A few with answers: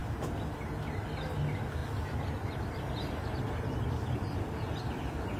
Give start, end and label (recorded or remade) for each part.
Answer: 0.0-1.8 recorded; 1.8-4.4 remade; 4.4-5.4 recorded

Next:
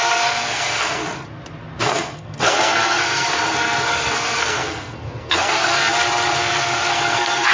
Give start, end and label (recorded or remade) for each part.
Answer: 0.0-1.0 remade; 1.0-1.8 recorded; 1.8-5.8 remade; 5.8-6.4 recorded; 6.4-7.5 remade

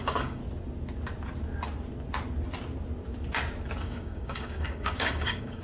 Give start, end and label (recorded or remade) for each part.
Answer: 0.0-0.4 remade; 0.4-3.8 recorded; 3.8-5.6 remade

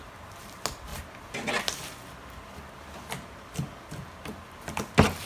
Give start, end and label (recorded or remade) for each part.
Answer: 0.0-5.3 recorded